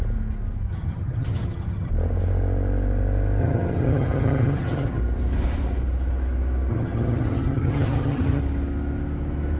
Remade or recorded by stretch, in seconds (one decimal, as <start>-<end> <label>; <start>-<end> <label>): 0.0-0.7 recorded; 0.7-1.9 remade; 1.9-3.4 recorded; 3.4-5.0 remade; 5.0-6.7 recorded; 6.7-8.4 remade; 8.4-9.6 recorded